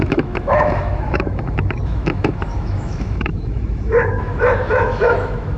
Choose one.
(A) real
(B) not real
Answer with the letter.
B